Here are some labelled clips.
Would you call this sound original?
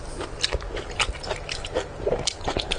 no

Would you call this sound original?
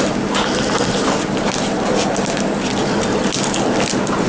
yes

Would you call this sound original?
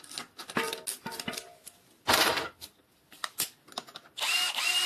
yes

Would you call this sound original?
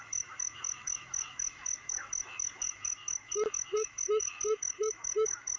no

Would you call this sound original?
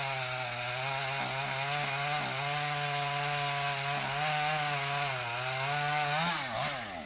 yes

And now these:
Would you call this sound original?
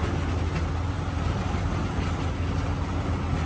yes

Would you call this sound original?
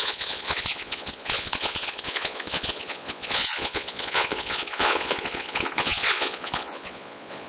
no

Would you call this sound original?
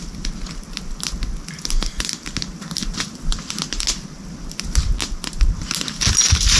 yes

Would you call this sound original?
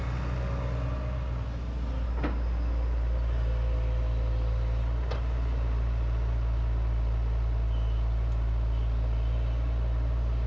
yes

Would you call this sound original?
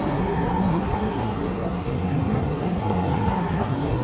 no